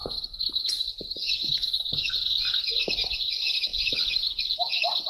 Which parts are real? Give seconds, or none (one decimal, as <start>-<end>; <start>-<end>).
0.0-1.9; 3.7-5.1